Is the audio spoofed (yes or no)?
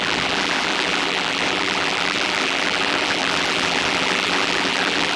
yes